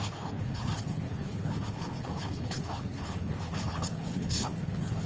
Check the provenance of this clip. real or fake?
fake